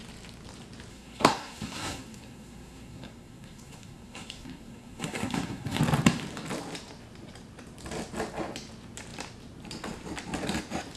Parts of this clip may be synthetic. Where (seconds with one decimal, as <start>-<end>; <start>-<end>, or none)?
0.9-5.8